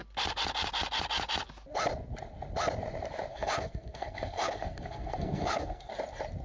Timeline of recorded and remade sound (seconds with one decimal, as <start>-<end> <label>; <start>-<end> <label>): 0.0-3.3 recorded; 3.3-5.9 remade; 5.9-6.4 recorded